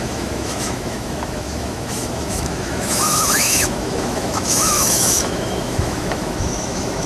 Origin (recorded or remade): remade